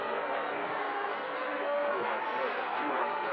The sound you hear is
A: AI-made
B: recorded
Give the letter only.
A